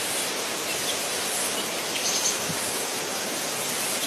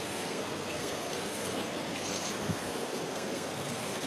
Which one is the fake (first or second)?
second